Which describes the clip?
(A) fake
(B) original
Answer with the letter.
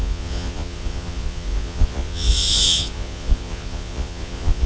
A